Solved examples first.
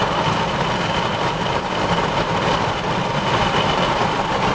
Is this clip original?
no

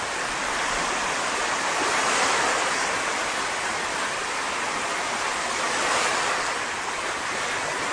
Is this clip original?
yes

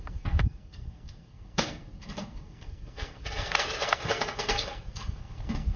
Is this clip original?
no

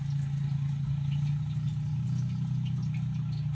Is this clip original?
yes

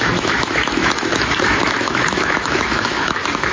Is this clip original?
no